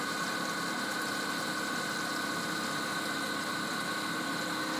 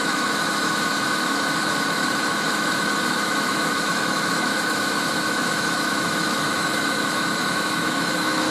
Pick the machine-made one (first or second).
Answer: second